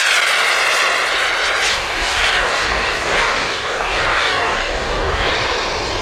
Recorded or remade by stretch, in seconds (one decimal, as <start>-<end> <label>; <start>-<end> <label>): 0.0-1.7 recorded; 1.7-5.3 remade; 5.3-6.0 recorded